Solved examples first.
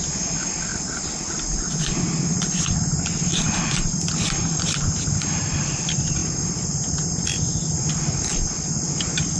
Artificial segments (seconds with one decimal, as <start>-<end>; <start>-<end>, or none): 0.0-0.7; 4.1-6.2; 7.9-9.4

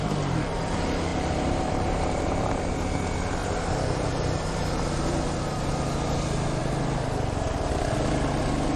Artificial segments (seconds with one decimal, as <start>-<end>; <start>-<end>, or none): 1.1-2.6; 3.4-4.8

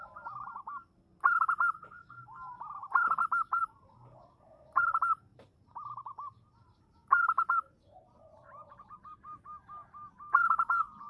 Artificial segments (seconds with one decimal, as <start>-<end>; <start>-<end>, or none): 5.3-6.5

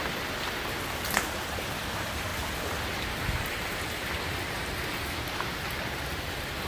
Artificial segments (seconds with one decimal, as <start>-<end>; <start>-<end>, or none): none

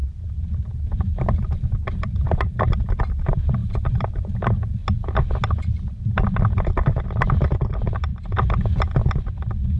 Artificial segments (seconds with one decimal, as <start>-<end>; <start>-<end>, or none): 0.7-4.8; 7.7-8.1